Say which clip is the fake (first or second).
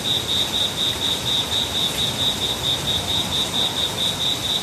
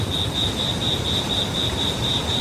second